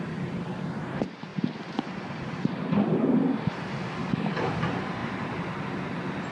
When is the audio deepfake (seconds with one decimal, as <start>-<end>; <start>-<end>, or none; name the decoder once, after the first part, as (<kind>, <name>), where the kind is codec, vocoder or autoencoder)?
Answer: 4.0-4.5 (codec, DAC)